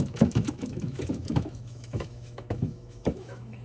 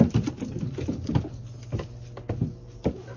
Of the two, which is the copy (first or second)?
first